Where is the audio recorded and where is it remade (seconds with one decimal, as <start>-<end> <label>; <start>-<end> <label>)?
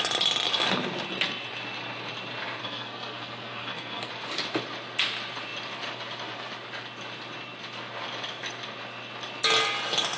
0.0-2.6 recorded; 2.6-4.1 remade; 4.1-10.2 recorded